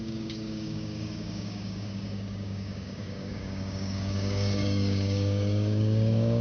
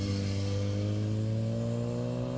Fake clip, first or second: first